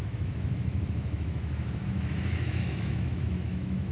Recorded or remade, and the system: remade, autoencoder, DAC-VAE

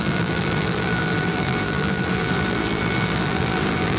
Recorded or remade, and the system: remade, vocoder, BigVGAN v2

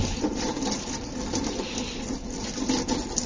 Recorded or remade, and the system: recorded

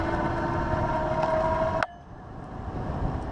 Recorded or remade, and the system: recorded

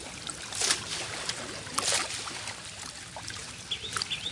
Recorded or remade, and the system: recorded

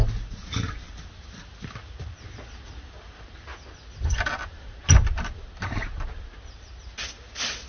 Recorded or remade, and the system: recorded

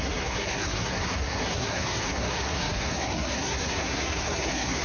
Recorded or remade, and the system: remade, codec, SNAC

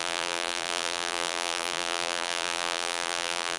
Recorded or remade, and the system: remade, vocoder, BigVGAN v2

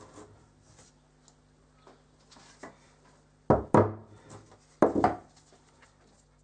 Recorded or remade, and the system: recorded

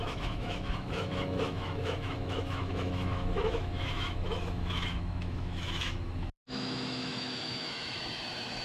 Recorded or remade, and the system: remade, autoencoder, DAC-VAE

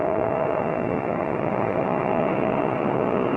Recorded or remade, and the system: remade, vocoder, Vocos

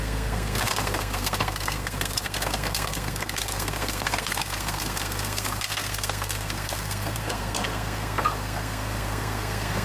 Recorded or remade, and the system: remade, codec, SNAC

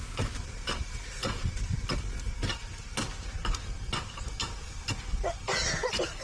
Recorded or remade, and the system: recorded